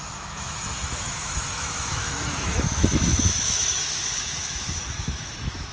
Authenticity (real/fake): fake